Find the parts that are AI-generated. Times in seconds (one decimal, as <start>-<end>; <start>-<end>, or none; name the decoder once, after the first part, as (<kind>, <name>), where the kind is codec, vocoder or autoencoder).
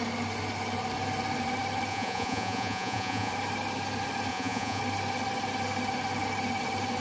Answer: 1.9-3.3 (vocoder, Vocos); 4.3-4.8